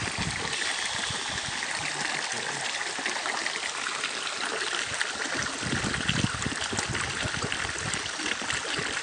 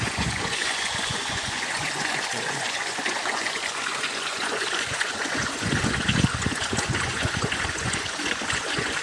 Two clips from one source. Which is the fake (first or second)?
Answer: second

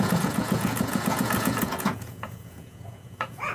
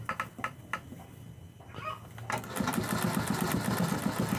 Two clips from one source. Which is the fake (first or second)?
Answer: first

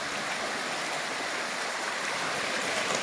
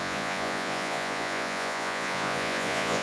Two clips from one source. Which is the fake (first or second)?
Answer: second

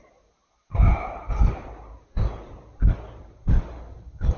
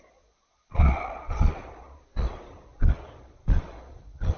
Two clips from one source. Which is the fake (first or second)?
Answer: second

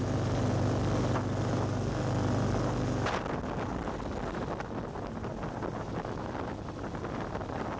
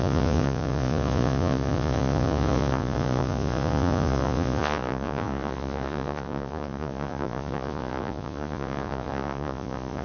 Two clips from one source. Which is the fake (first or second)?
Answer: second